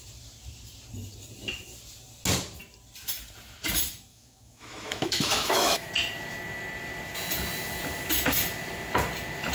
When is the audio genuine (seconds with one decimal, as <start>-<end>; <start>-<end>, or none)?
0.0-4.1; 5.9-9.5